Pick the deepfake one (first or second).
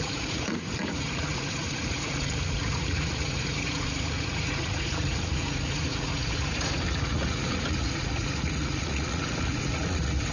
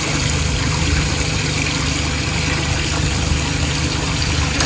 first